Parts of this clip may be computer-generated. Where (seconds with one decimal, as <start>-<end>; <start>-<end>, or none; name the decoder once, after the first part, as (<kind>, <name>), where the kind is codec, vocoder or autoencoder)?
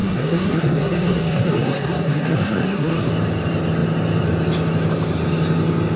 0.0-3.1 (codec, SNAC)